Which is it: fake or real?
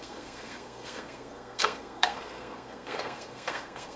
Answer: fake